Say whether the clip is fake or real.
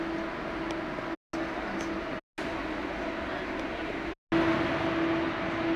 real